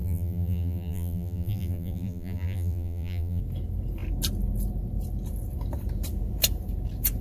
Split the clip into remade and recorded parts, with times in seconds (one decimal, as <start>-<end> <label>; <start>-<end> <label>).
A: 0.0-3.4 remade; 3.4-7.2 recorded